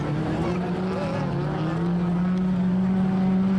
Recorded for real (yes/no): yes